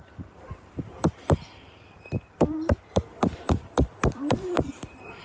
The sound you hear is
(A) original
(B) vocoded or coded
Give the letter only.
B